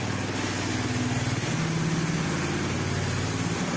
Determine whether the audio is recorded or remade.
recorded